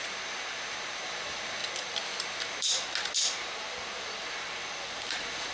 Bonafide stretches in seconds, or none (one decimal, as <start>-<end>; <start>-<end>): 1.6-4.9